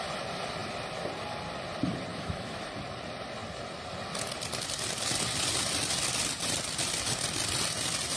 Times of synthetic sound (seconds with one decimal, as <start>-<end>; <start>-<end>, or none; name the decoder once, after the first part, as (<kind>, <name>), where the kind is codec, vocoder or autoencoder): 2.1-2.7 (autoencoder, DAC-VAE)